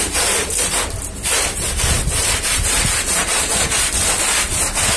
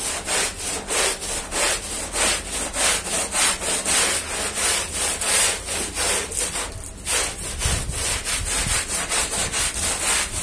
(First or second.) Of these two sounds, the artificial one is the first